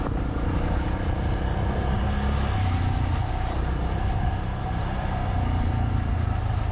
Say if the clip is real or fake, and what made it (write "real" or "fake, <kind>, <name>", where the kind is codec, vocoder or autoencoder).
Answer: real